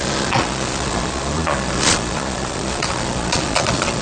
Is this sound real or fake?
fake